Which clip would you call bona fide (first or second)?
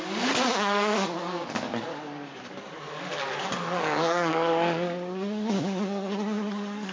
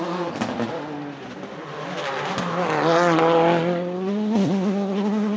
second